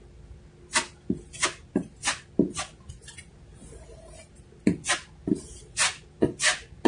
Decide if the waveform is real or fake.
real